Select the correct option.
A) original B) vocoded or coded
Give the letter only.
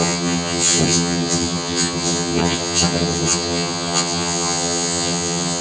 B